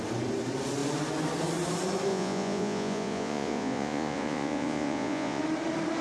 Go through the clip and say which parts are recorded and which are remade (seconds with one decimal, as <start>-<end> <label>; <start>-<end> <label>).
0.0-2.1 recorded; 2.1-5.4 remade; 5.4-6.0 recorded